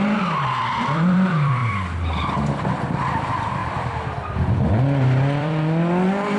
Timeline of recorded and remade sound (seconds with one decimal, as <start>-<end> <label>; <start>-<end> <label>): 0.0-3.6 remade; 3.6-4.7 recorded; 4.7-6.4 remade